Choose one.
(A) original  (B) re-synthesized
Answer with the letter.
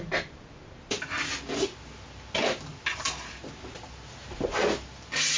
A